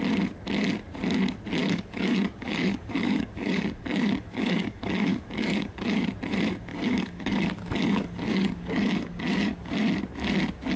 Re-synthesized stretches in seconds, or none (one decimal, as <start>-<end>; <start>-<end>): 1.6-6.0; 6.7-9.7